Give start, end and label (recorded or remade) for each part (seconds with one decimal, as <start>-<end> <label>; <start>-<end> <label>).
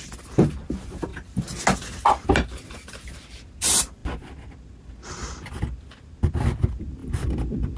0.0-7.8 recorded